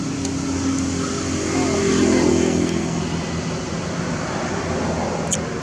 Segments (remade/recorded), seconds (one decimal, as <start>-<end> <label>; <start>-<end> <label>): 0.0-2.3 recorded; 2.3-3.0 remade; 3.0-5.6 recorded

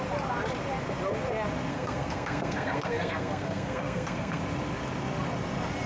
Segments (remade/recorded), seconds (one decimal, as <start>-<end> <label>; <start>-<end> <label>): 0.0-1.7 recorded; 1.7-4.4 remade; 4.4-5.9 recorded

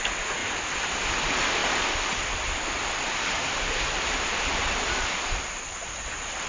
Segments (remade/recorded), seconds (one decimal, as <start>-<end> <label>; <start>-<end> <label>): 0.0-1.6 recorded; 1.6-5.5 remade; 5.5-6.5 recorded

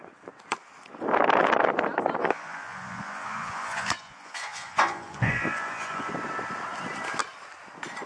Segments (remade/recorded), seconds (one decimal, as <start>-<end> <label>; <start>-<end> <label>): 0.0-2.2 recorded; 2.2-6.1 remade; 6.1-8.1 recorded

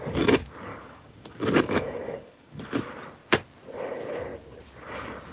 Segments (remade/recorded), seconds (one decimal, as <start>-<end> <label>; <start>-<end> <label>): 0.0-0.7 recorded; 0.7-2.6 remade; 2.6-5.3 recorded

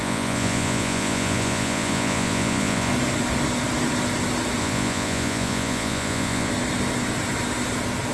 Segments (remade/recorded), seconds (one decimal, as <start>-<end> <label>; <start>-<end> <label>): 0.0-2.9 remade; 2.9-4.6 recorded; 4.6-6.5 remade; 6.5-8.1 recorded

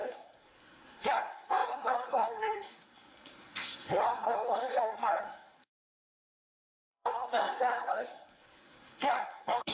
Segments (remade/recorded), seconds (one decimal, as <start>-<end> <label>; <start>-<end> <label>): 0.0-9.7 remade